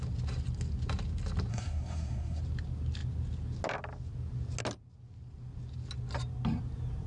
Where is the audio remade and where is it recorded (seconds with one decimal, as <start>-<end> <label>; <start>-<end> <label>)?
0.0-1.5 recorded; 1.5-2.4 remade; 2.4-7.1 recorded